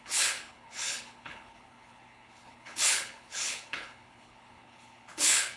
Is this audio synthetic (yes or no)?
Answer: yes